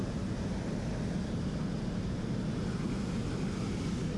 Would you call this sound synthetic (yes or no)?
no